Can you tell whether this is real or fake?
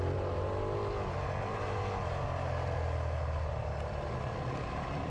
real